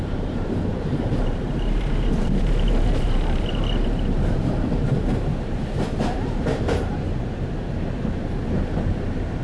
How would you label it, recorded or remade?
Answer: remade